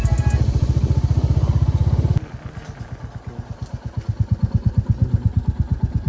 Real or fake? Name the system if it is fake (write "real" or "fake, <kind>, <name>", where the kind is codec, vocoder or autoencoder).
real